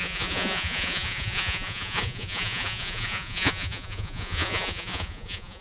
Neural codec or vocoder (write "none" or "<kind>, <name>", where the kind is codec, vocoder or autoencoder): vocoder, Vocos